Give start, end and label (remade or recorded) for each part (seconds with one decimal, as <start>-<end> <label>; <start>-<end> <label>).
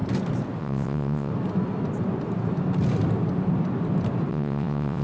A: 0.0-0.6 recorded; 0.6-1.3 remade; 1.3-4.3 recorded; 4.3-5.0 remade